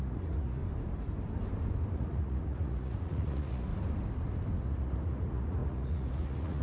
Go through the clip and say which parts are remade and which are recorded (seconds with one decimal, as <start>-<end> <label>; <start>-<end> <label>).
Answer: 0.0-0.6 remade; 0.6-1.9 recorded; 1.9-3.7 remade; 3.7-4.5 recorded; 4.5-6.6 remade